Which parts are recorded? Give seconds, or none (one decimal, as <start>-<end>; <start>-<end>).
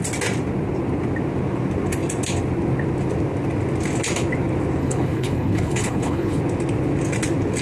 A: 0.0-4.8; 6.4-7.6